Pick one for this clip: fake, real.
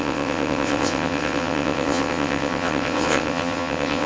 fake